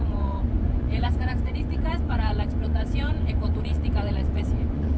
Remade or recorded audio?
remade